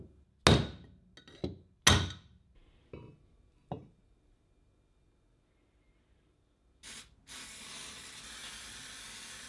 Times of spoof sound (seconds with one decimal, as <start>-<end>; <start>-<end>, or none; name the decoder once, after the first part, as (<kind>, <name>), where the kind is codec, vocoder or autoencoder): none